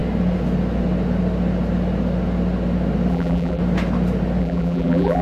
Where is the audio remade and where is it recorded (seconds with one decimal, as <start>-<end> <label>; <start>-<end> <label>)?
0.0-3.1 recorded; 3.1-3.6 remade; 3.6-4.4 recorded; 4.4-5.2 remade